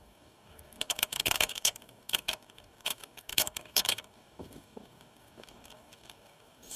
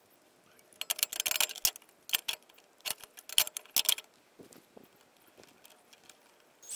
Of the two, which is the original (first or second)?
second